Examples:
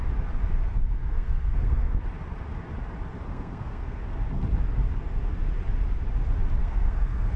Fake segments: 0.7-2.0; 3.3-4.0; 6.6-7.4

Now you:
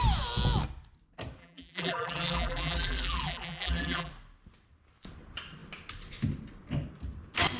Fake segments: 1.4-4.1

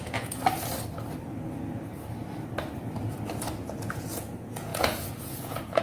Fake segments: 0.0-0.4; 3.9-5.8

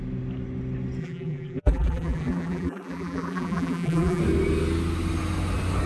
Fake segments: 1.0-4.2

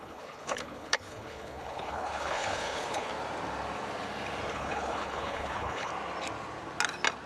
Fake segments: 0.0-3.1; 4.5-5.9

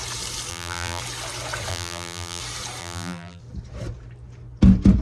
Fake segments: 0.5-1.0; 1.7-2.4; 2.8-3.4

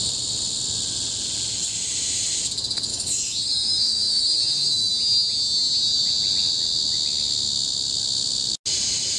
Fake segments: 2.9-4.9